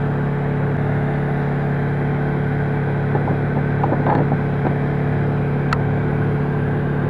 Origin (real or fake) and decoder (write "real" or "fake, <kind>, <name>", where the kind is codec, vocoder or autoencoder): real